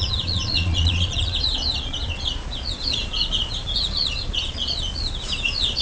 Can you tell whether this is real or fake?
fake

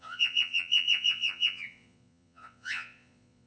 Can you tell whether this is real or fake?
fake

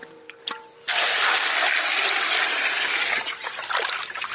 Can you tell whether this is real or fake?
real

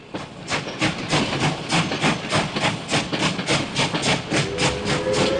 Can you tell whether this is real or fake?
real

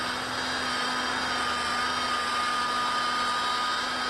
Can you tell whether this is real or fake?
real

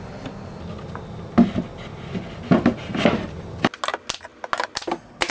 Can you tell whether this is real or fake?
real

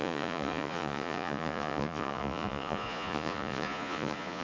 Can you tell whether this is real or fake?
fake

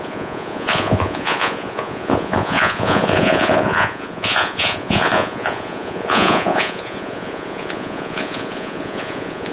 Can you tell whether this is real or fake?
fake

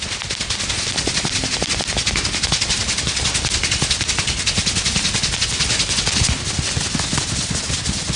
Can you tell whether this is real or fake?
real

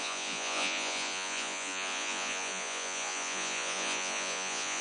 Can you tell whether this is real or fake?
fake